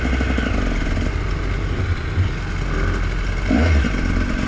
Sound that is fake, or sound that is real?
real